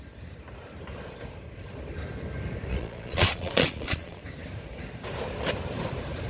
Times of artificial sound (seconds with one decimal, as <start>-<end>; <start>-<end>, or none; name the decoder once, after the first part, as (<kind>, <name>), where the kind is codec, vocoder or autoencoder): 2.7-4.2 (vocoder, Vocos)